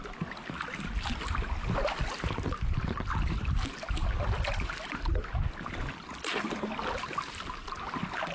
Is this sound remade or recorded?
recorded